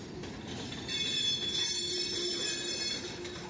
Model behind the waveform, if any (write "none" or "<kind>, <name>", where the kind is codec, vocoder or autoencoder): none